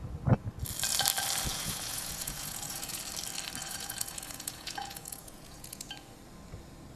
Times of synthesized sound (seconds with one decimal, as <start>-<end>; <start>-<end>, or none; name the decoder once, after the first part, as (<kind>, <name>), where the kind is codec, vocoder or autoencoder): 1.5-3.0 (vocoder, Vocos); 3.6-5.9